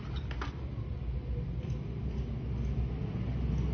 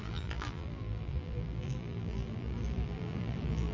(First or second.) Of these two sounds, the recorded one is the first